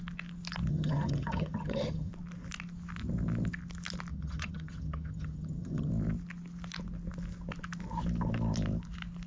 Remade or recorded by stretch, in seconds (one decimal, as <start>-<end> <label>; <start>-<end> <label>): 0.0-0.7 recorded; 0.7-2.1 remade; 2.1-4.1 recorded; 4.1-5.9 remade; 5.9-9.3 recorded

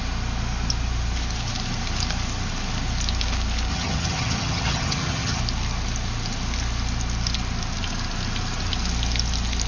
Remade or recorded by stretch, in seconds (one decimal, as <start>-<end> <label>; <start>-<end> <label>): 0.0-3.7 recorded; 3.7-5.4 remade; 5.4-9.7 recorded

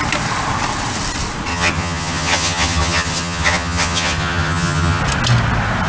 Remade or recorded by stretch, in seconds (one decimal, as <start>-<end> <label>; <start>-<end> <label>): 0.0-1.5 recorded; 1.5-5.0 remade; 5.0-5.9 recorded

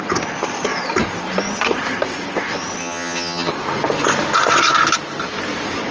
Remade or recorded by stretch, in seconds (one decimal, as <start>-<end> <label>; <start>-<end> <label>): 0.0-2.8 recorded; 2.8-3.5 remade; 3.5-5.9 recorded

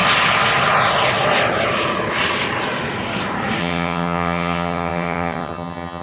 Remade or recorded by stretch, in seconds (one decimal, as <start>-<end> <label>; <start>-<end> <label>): 0.0-3.6 recorded; 3.6-6.0 remade

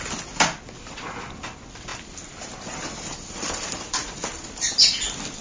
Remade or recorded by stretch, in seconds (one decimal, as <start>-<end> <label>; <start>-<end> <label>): 0.0-5.4 recorded

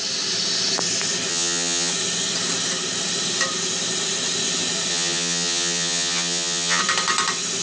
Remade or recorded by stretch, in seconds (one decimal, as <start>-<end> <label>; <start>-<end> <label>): 0.0-1.3 recorded; 1.3-1.9 remade; 1.9-4.9 recorded; 4.9-6.8 remade; 6.8-7.6 recorded